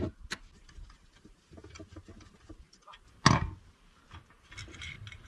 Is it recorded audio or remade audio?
recorded